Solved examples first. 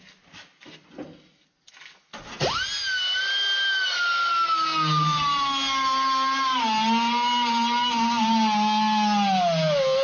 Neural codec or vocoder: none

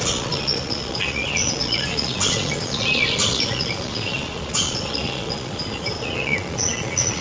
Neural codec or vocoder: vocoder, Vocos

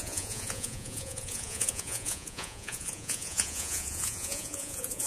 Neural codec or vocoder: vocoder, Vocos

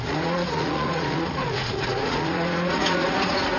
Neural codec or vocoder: vocoder, Vocos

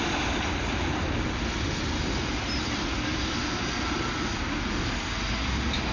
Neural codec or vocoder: none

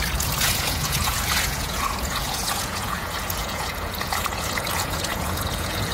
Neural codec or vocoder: vocoder, Vocos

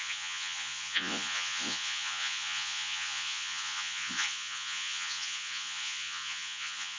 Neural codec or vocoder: vocoder, Vocos